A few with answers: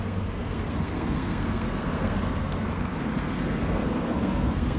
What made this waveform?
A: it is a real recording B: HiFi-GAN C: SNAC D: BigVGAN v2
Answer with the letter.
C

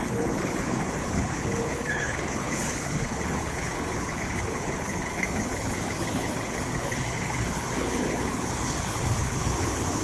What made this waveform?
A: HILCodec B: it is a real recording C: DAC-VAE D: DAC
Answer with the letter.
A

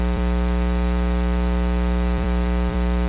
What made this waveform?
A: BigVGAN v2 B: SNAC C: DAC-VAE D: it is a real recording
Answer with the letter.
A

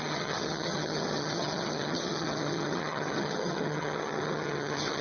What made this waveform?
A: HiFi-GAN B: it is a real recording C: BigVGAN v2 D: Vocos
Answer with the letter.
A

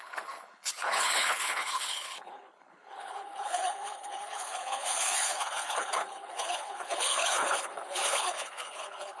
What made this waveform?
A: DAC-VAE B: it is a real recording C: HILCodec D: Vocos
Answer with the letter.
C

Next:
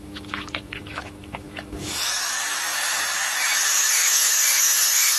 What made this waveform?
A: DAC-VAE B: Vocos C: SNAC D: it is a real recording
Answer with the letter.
A